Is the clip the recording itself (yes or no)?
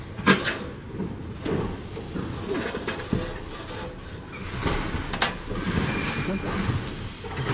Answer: yes